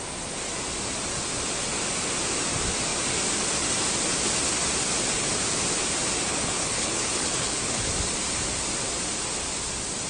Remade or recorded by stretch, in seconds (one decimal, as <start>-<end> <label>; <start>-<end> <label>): 0.0-6.3 recorded; 6.3-7.8 remade; 7.8-10.1 recorded